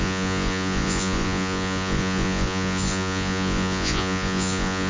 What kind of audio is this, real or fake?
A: fake